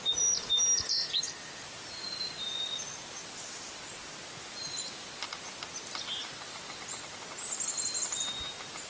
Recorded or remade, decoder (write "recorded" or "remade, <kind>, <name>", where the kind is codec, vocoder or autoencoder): recorded